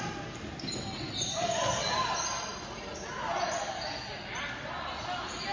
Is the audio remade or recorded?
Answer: recorded